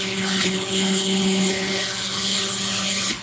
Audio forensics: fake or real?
fake